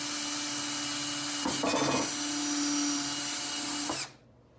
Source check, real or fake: real